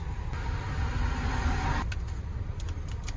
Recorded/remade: recorded